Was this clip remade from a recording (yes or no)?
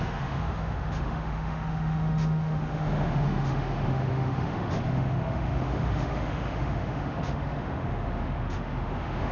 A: yes